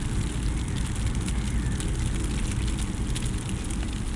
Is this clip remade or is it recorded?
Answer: recorded